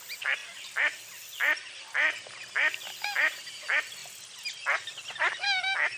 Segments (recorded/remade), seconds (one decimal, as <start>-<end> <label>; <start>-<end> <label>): 0.0-6.0 recorded